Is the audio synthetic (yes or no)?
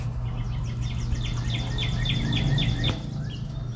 no